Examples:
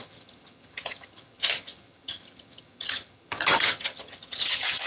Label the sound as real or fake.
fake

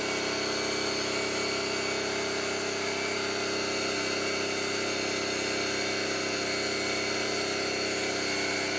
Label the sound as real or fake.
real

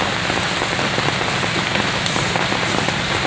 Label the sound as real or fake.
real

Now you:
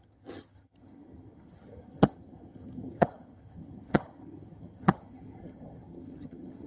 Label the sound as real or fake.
fake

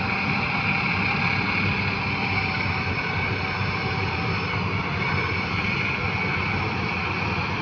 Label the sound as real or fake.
real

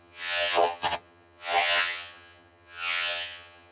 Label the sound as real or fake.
fake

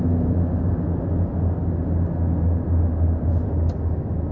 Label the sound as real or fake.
real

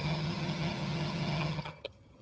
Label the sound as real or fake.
fake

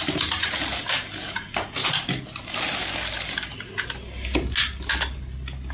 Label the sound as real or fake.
real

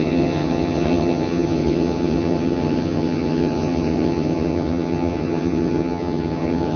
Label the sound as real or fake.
fake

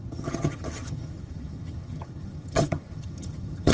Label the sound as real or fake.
fake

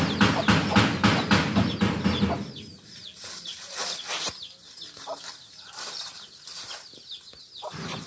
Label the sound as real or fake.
real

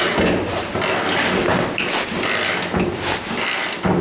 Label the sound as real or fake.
real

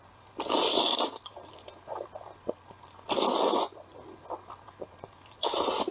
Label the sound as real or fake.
real